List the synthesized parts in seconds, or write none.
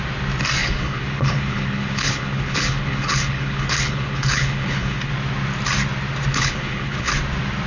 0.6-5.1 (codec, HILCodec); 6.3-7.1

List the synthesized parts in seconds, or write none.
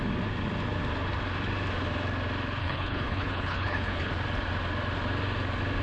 2.6-4.1 (codec, HILCodec)